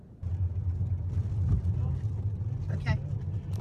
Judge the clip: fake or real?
real